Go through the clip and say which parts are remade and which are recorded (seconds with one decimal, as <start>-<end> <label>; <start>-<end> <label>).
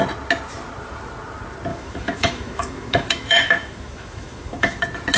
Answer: 0.0-1.7 recorded; 1.7-4.8 remade; 4.8-5.2 recorded